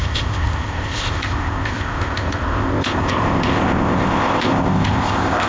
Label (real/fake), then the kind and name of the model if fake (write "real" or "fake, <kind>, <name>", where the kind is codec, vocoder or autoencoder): fake, codec, ZipCodec